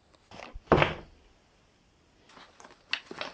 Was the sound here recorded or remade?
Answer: recorded